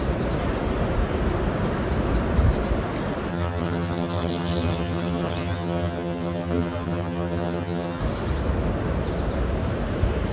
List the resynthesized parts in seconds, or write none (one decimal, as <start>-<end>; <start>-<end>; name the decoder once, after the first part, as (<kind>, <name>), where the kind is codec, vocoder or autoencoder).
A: 3.3-8.0 (vocoder, HiFi-GAN)